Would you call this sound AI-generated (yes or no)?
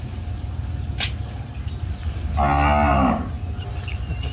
no